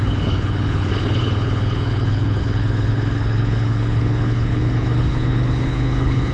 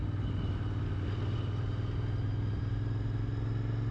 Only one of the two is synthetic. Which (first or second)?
first